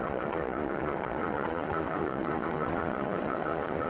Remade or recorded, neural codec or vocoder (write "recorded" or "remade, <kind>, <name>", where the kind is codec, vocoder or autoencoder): remade, vocoder, Vocos